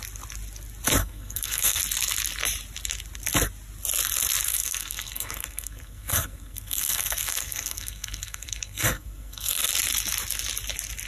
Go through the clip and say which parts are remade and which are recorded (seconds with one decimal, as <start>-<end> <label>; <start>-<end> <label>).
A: 0.0-1.0 recorded; 1.0-1.8 remade; 1.8-4.5 recorded; 4.5-9.7 remade; 9.7-11.1 recorded